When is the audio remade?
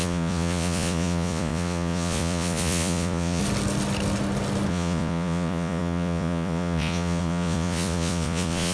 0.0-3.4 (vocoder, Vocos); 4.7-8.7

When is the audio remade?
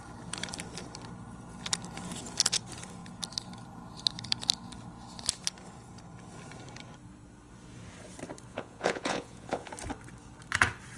8.5-9.7 (vocoder, Vocos)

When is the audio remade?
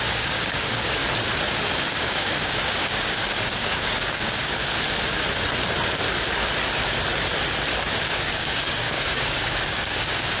0.0-1.0 (codec, DAC); 1.9-4.6; 8.1-10.4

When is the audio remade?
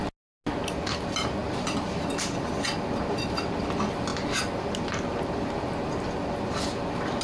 none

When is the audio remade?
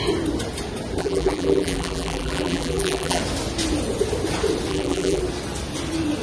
1.0-3.2 (vocoder, BigVGAN v2); 4.7-5.2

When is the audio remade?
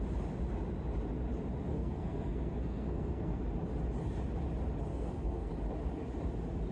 1.7-3.4 (codec, SNAC); 4.9-5.5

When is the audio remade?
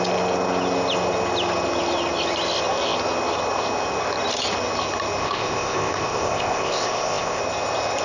5.2-7.4 (codec, ZipCodec)